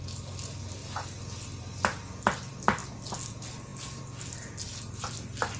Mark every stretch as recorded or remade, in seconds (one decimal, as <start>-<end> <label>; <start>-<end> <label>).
0.0-5.6 recorded